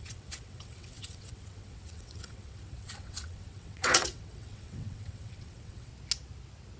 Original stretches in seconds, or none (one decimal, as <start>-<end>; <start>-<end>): 5.9-6.8